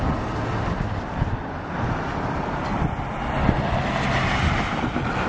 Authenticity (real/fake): real